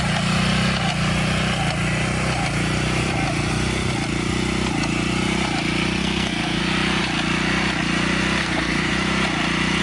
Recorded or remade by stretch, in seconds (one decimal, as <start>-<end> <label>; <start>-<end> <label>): 0.0-6.0 recorded; 6.0-6.6 remade; 6.6-8.4 recorded; 8.4-8.9 remade; 8.9-9.8 recorded

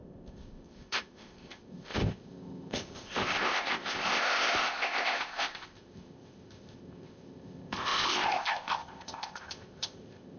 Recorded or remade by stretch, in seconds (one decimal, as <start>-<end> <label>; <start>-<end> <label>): 0.0-10.4 remade

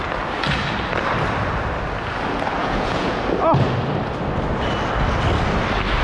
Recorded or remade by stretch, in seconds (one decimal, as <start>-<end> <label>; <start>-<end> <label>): 0.0-2.6 recorded; 2.6-3.2 remade; 3.2-6.0 recorded

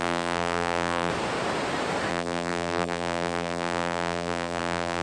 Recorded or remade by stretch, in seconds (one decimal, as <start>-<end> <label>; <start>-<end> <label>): 0.0-1.1 remade; 1.1-2.1 recorded; 2.1-5.0 remade

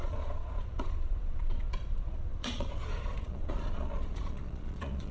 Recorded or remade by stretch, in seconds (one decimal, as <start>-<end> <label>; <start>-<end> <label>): 0.0-5.1 remade

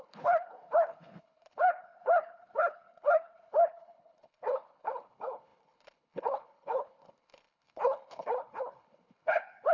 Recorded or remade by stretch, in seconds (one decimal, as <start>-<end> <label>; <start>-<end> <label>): 0.0-9.7 remade